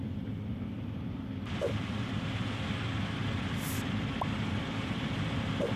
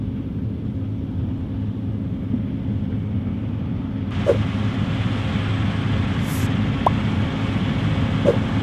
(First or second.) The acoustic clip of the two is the second